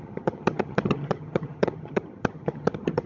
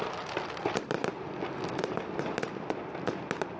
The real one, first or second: second